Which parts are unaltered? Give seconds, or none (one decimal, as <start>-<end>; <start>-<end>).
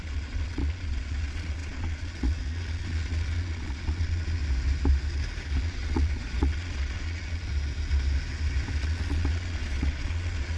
4.4-5.6; 7.5-8.8